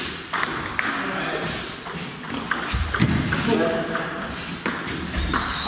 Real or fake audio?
real